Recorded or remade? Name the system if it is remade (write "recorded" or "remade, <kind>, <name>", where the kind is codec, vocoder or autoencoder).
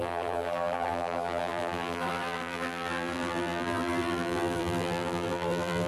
remade, vocoder, BigVGAN v2